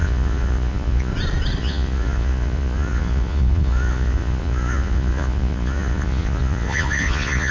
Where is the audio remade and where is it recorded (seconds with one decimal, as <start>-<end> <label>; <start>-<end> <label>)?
0.0-1.1 remade; 1.1-1.6 recorded; 1.6-7.5 remade